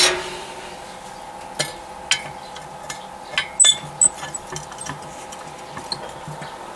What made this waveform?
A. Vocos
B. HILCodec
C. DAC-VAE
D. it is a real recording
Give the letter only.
D